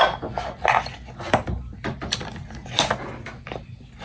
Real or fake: real